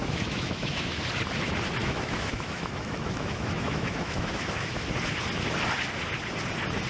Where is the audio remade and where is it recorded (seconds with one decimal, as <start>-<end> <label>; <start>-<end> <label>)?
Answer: 0.0-1.0 remade; 1.0-1.8 recorded; 1.8-4.9 remade; 4.9-6.9 recorded